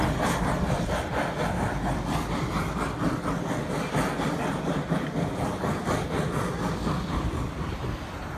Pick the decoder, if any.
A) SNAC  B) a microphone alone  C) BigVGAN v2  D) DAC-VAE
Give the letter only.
B